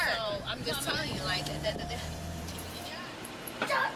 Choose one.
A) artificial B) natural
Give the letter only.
A